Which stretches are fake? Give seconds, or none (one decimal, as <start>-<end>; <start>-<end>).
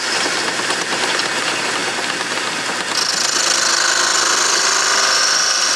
none